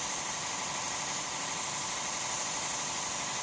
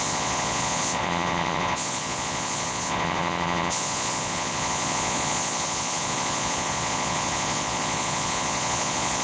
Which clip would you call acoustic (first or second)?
first